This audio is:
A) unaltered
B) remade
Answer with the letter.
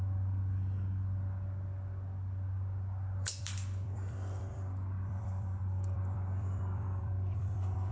B